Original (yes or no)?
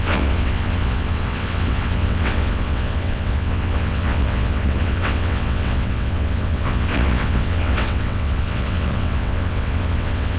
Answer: no